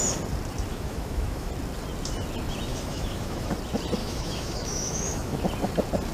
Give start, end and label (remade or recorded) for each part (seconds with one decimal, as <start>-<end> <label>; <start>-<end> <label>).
0.0-0.7 recorded; 0.7-1.5 remade; 1.5-2.7 recorded; 2.7-3.5 remade; 3.5-4.0 recorded; 4.0-5.4 remade; 5.4-6.1 recorded